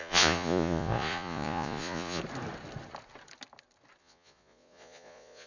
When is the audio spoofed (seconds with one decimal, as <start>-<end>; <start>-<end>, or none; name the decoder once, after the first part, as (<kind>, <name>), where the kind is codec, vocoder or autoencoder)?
0.0-2.2 (vocoder, Vocos); 4.0-5.5